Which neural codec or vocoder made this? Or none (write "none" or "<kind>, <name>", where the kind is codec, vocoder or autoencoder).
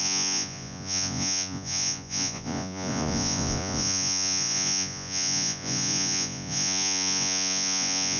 vocoder, Vocos